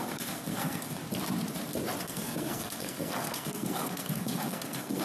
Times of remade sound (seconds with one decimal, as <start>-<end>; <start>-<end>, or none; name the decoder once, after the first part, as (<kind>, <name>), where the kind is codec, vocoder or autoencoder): 0.0-1.0 (codec, SNAC); 2.0-5.0